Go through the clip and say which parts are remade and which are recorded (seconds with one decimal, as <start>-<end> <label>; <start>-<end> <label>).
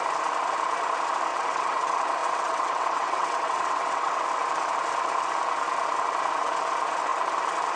0.0-1.3 recorded; 1.3-1.8 remade; 1.8-2.2 recorded; 2.2-4.2 remade; 4.2-7.8 recorded